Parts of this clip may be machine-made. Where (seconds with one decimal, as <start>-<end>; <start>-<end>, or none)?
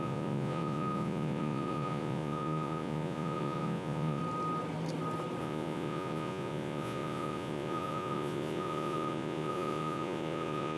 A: 0.0-4.2; 5.4-10.8